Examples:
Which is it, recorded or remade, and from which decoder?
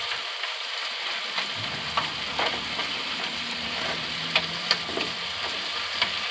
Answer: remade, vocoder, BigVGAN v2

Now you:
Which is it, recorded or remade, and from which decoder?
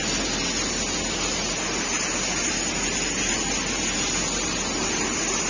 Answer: recorded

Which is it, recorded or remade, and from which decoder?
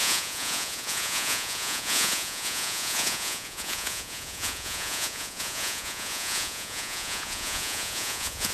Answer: remade, vocoder, Vocos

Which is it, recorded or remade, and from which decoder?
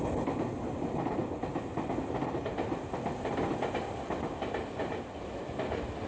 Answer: recorded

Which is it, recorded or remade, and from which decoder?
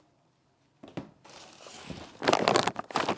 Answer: remade, vocoder, BigVGAN v2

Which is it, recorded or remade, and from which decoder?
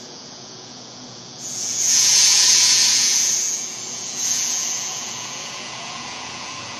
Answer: remade, vocoder, Vocos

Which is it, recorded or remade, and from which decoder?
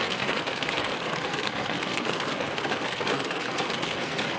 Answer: remade, codec, SNAC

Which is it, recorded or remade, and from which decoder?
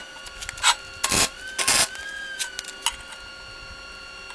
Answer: recorded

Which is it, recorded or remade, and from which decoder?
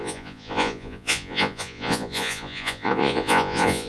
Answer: remade, vocoder, Vocos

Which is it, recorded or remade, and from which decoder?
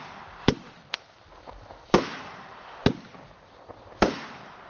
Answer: remade, vocoder, BigVGAN v2